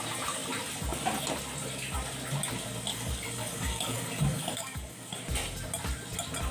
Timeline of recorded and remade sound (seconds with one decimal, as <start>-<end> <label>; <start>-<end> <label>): 0.0-2.9 recorded; 2.9-5.1 remade; 5.1-6.5 recorded